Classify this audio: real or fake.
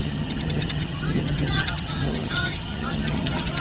fake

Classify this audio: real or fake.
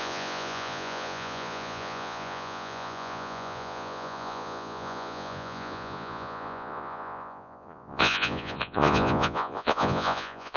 fake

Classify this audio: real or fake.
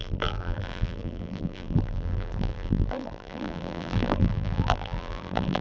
fake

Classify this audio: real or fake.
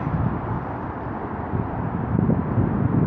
real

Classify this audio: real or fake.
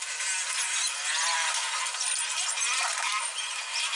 real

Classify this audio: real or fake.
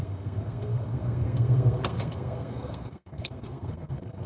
fake